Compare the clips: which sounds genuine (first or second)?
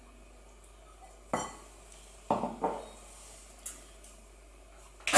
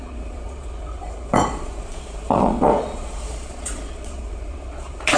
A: first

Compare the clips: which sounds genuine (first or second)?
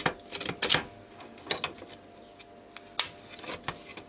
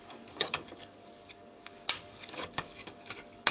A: first